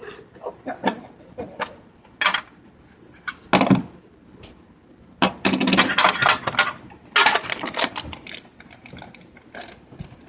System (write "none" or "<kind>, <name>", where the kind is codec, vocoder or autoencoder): none